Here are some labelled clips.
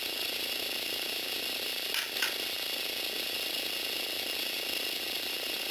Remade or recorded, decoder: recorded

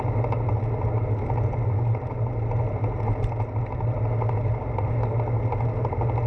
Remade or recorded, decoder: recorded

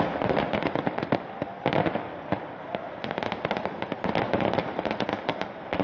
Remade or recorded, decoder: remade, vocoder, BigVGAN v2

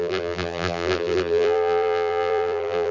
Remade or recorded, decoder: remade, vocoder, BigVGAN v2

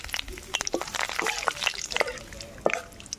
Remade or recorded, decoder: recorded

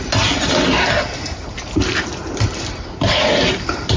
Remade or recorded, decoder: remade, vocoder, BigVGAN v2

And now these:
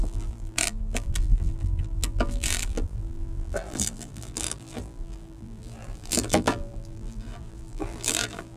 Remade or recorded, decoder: remade, vocoder, BigVGAN v2